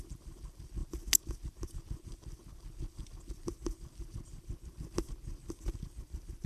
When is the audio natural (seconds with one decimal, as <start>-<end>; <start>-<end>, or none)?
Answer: 0.0-6.5